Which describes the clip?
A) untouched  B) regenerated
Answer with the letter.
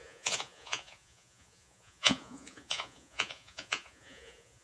B